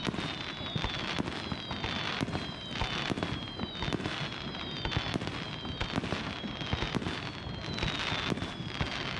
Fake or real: real